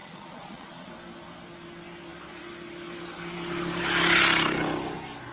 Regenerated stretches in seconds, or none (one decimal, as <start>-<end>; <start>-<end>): 0.0-0.9